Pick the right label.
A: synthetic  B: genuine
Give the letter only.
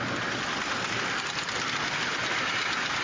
B